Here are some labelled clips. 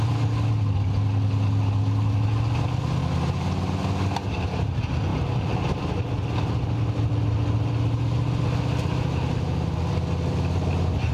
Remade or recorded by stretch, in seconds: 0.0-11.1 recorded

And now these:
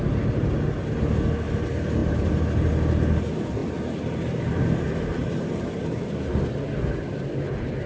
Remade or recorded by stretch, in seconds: 0.0-7.9 recorded

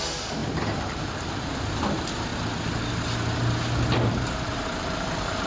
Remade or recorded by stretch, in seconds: 0.0-0.4 recorded; 0.4-1.6 remade; 1.6-4.5 recorded; 4.5-5.5 remade

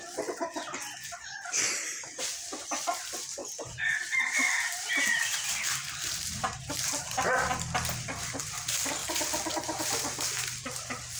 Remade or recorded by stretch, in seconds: 0.0-11.2 recorded

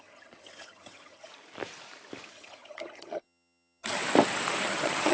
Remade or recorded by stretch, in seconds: 0.0-1.3 remade; 1.3-2.3 recorded; 2.3-4.0 remade; 4.0-4.6 recorded; 4.6-5.1 remade

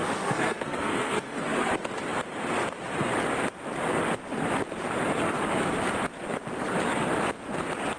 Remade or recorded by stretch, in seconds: 0.0-1.7 remade; 1.7-8.0 recorded